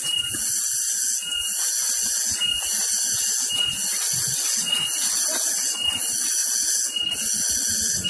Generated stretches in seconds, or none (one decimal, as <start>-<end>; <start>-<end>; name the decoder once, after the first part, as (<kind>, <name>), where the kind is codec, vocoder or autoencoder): none